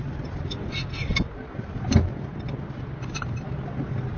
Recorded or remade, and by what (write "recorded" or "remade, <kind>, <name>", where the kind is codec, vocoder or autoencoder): recorded